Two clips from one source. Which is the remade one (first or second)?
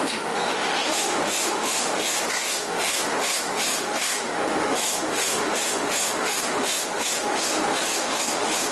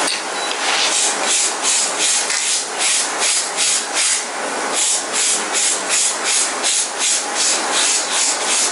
first